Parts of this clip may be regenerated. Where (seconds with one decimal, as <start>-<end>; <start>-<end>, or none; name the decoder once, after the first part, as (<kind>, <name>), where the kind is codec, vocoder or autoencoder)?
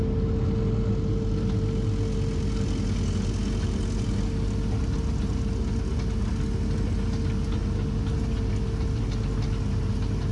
none